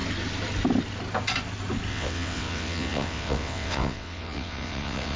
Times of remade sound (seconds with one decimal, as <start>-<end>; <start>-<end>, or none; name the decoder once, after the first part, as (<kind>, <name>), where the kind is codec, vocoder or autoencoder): 1.9-5.2 (vocoder, WaveNeXt)